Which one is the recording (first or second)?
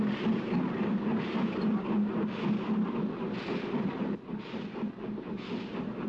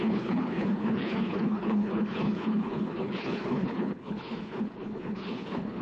first